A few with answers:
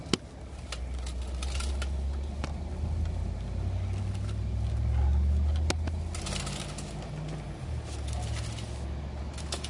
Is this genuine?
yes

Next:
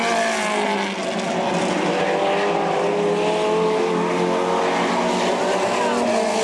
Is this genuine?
yes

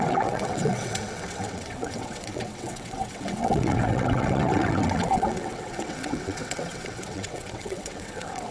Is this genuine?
no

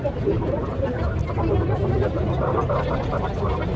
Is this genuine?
yes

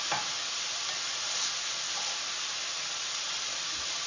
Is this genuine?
yes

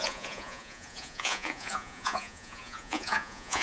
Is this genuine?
no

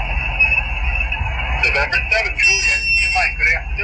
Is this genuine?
yes